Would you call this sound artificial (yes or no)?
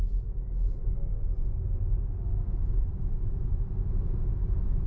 no